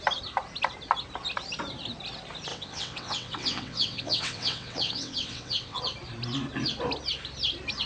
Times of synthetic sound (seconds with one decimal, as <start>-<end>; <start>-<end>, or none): 2.5-5.8